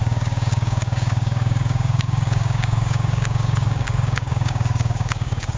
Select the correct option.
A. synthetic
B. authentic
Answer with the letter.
A